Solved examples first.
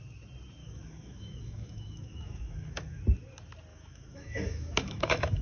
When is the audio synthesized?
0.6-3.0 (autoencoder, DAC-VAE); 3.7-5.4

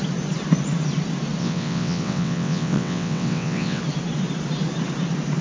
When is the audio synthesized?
1.4-3.8 (vocoder, WaveNeXt)

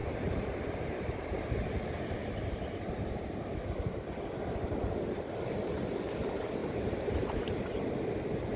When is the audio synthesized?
0.0-2.7 (vocoder, BigVGAN v2); 6.6-7.6

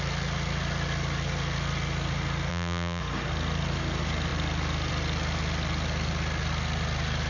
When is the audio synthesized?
2.5-3.0 (vocoder, BigVGAN v2)

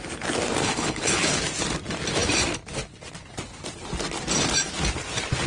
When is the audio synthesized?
0.6-1.4 (codec, HILCodec)